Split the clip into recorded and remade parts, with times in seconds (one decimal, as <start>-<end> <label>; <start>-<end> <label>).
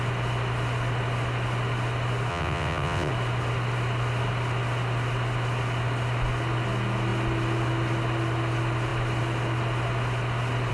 0.0-2.3 recorded; 2.3-3.1 remade; 3.1-10.7 recorded